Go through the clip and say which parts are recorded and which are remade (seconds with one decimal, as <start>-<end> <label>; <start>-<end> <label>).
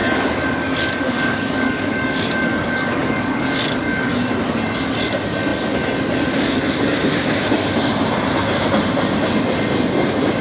0.0-4.1 remade; 4.1-10.4 recorded